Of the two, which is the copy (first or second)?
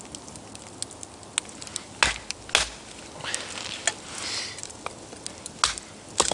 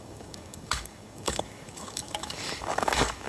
second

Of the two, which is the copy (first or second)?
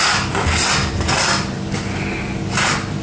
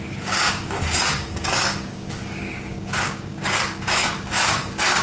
second